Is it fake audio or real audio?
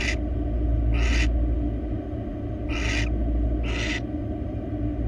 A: real